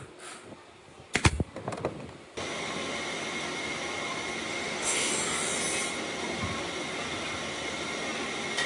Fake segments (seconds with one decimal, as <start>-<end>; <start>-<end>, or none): 4.5-5.1

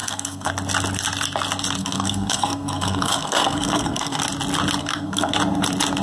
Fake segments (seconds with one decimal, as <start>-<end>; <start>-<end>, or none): 0.0-0.5; 1.8-4.2; 4.8-5.3

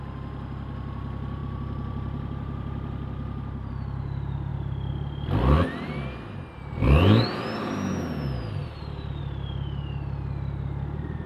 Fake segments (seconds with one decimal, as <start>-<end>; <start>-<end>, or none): 1.4-3.7; 8.6-9.2

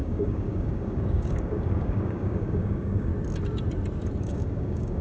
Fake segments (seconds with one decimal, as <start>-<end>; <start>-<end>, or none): 0.0-3.1; 4.2-5.0